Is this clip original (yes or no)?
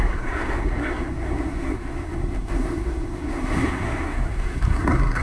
no